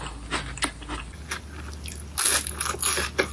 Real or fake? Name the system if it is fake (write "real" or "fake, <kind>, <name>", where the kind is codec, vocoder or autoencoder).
real